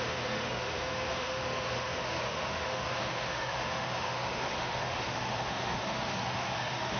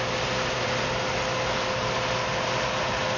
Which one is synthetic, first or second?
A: first